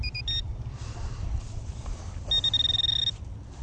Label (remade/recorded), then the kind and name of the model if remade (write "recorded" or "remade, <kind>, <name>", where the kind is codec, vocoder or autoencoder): recorded